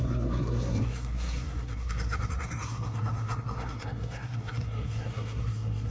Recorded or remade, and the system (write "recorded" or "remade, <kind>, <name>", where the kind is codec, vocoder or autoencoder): remade, codec, SNAC